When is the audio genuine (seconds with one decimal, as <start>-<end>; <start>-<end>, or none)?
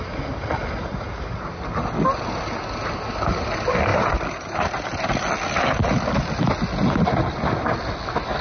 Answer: 0.0-8.4